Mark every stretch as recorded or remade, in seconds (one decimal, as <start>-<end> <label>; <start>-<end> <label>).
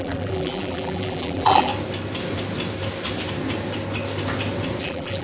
0.0-1.7 remade; 1.7-4.8 recorded; 4.8-5.2 remade